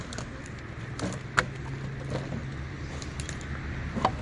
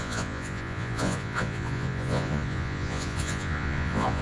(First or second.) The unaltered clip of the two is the first